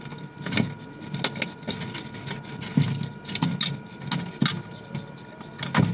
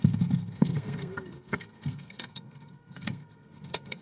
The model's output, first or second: second